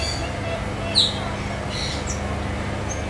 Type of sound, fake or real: real